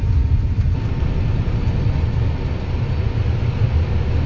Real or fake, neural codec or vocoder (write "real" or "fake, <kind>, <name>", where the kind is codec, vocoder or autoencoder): real